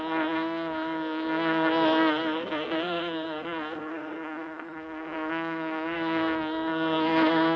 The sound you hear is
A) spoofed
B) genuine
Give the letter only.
A